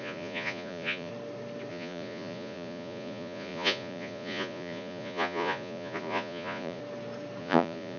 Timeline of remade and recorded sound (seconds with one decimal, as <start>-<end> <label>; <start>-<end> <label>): 0.0-1.1 remade; 1.1-1.7 recorded; 1.7-6.8 remade; 6.8-7.4 recorded; 7.4-8.0 remade